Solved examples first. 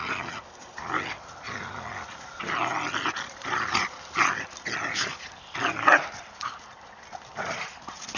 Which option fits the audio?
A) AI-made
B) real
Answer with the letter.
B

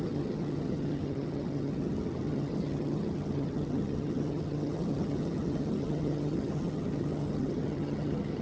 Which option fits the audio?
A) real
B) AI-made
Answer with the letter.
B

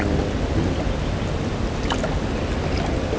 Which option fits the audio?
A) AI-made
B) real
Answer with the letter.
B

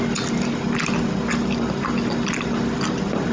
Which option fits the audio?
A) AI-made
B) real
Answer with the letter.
B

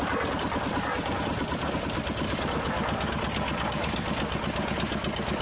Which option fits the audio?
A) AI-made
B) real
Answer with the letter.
B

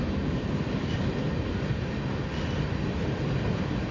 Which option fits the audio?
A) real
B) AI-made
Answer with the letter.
A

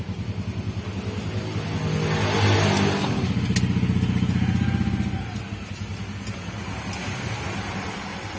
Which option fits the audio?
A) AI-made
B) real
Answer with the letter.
B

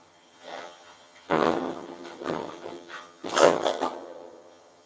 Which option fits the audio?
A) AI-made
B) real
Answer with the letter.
A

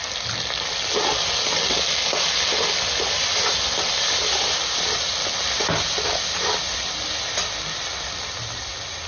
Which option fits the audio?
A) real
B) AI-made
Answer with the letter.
A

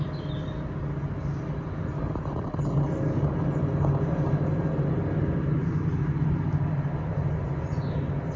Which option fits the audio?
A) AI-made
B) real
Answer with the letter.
B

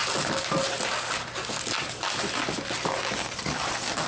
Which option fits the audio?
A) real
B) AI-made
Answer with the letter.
A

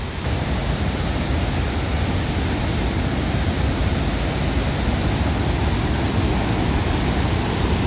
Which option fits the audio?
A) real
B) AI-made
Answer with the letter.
A